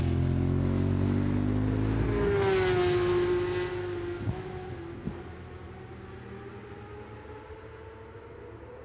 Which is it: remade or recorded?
recorded